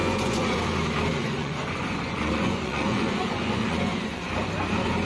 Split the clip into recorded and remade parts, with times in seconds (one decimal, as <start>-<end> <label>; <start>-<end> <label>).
0.0-0.6 remade; 0.6-1.2 recorded; 1.2-4.3 remade; 4.3-5.1 recorded